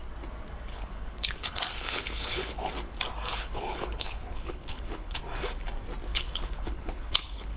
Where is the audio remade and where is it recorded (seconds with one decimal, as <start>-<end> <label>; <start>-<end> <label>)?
0.0-0.7 recorded; 0.7-2.7 remade; 2.7-3.3 recorded; 3.3-5.2 remade; 5.2-6.1 recorded; 6.1-7.6 remade